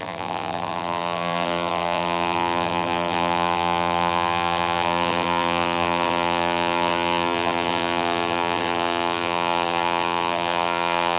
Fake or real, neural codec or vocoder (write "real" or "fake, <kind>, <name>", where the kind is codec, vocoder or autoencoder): fake, vocoder, BigVGAN v2